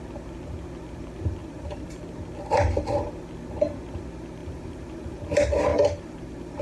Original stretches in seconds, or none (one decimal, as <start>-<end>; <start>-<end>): 0.0-1.4; 2.0-4.4; 5.2-5.7

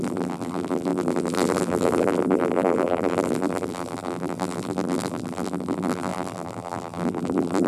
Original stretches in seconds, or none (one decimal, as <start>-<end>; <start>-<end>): none

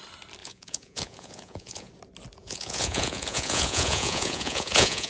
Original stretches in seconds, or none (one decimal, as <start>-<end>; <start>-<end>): 0.0-0.4; 1.9-2.4

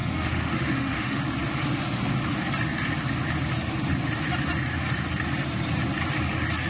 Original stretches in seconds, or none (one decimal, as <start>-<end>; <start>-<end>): 1.2-6.7

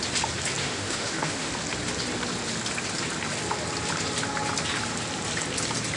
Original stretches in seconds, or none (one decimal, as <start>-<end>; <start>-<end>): 0.0-0.6; 1.5-6.0

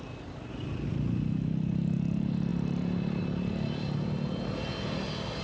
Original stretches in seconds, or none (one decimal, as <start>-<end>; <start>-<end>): 0.0-5.4

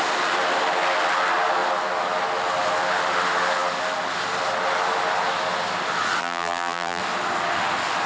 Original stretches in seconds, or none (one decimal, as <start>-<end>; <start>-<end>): 0.0-6.2; 7.0-8.1

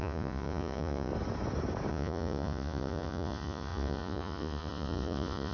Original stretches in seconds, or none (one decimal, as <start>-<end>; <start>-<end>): 1.1-1.9